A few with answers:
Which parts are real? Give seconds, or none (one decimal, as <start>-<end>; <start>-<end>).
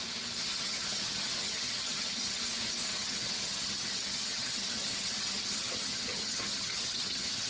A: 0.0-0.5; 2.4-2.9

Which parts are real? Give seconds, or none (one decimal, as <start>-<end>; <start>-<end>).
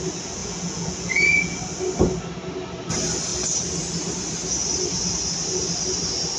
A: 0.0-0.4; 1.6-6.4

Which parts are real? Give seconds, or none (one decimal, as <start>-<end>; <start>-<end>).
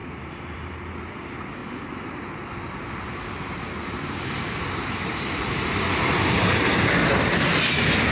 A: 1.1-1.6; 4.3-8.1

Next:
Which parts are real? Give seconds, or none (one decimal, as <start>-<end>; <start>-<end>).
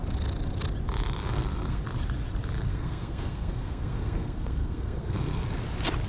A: 0.0-1.2; 1.8-2.7; 5.4-6.1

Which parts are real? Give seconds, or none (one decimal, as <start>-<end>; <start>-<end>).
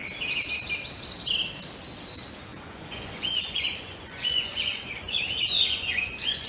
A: 0.0-2.5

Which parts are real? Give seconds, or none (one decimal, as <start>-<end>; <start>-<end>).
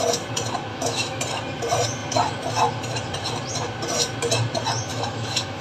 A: 0.0-0.7; 1.2-4.9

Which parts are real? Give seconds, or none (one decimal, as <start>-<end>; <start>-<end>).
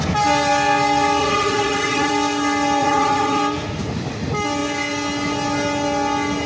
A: 0.0-1.2; 2.1-2.8; 3.4-6.5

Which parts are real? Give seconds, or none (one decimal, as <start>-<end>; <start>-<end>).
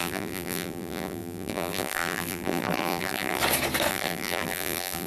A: 3.4-3.9